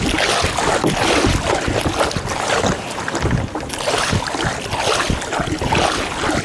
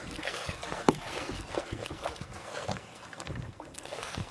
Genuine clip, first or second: first